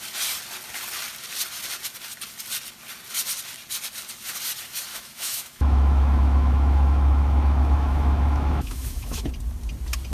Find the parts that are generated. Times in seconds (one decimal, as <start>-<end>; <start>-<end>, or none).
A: 4.9-9.3